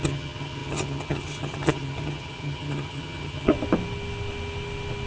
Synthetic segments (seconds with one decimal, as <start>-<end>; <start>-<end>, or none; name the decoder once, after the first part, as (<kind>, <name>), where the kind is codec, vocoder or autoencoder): 0.0-3.5 (vocoder, HiFi-GAN)